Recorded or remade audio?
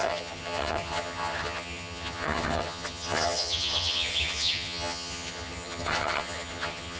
remade